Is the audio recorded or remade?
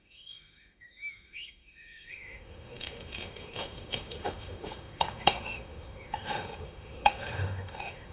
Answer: remade